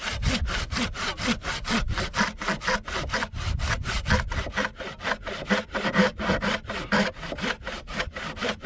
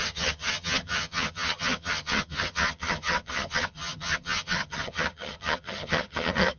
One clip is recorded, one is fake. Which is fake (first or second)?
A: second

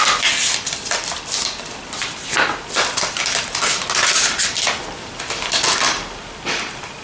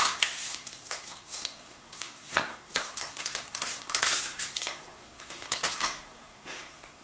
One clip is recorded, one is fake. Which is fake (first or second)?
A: second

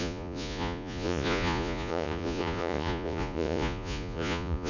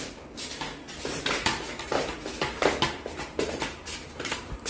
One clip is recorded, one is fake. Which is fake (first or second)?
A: first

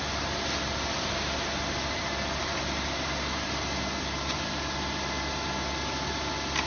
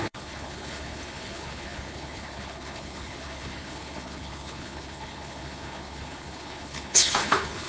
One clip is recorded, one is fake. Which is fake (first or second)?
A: second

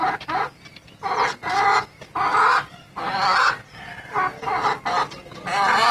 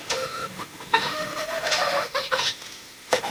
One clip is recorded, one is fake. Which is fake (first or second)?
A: second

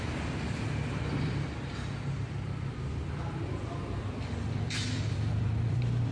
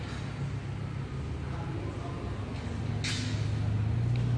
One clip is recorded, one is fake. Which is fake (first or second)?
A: first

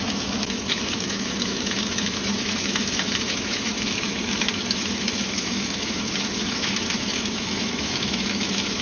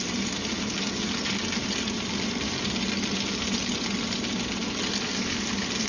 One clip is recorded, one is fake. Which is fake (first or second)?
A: first